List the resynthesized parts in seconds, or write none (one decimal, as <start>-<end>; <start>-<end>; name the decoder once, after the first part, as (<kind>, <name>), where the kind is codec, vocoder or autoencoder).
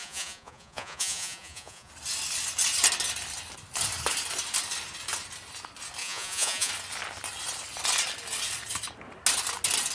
0.0-1.9 (vocoder, Vocos); 6.0-6.7